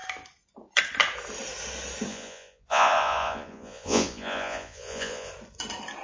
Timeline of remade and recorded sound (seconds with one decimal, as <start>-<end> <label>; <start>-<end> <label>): 0.0-2.1 recorded; 2.1-5.3 remade; 5.3-6.0 recorded